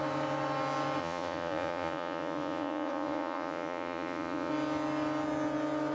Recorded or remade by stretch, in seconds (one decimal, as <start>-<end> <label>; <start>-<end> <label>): 0.0-1.0 recorded; 1.0-4.5 remade; 4.5-5.9 recorded